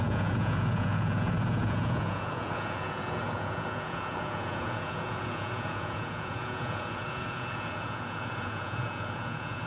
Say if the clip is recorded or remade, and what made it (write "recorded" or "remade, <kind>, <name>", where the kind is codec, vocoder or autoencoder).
remade, vocoder, Vocos